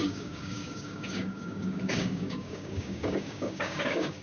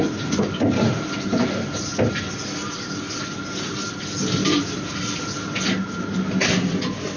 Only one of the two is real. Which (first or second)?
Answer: second